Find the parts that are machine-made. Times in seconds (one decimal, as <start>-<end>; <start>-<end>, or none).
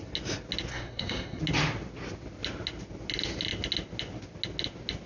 0.7-1.4